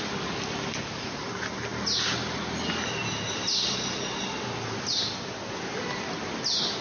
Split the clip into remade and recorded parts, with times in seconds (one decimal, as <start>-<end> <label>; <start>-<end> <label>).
0.0-6.8 recorded